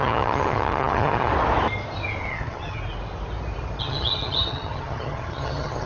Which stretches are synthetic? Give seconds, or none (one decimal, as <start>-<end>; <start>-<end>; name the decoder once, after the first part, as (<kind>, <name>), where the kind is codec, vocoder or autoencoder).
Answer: 0.0-1.3 (vocoder, HiFi-GAN); 2.3-2.8; 3.8-5.9